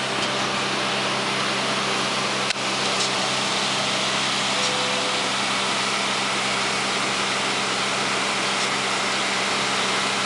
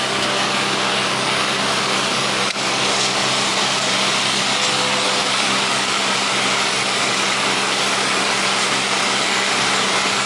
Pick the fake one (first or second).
second